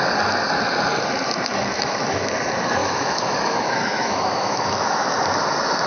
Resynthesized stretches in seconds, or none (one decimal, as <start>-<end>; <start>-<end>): 1.7-2.3; 2.8-5.1